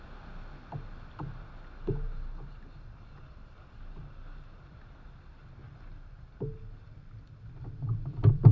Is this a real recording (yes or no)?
yes